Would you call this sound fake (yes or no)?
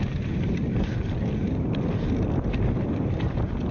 no